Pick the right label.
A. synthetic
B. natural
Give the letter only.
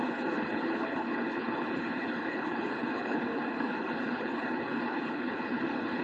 A